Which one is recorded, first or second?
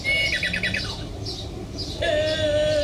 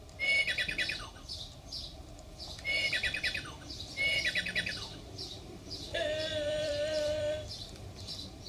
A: first